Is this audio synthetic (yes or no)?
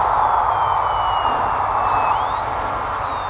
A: no